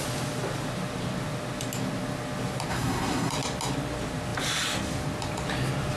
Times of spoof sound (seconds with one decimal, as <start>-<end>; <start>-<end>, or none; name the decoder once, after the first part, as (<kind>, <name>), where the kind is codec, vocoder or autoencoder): 2.7-3.3 (codec, SNAC)